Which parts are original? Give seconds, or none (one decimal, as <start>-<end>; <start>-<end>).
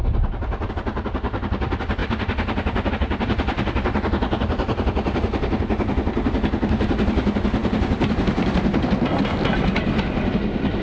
0.0-10.8